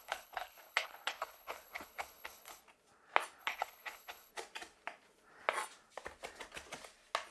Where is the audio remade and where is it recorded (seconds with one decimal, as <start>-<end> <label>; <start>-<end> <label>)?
0.0-2.6 remade; 2.6-3.4 recorded; 3.4-4.3 remade; 4.3-7.3 recorded